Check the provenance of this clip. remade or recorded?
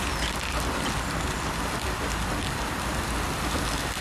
recorded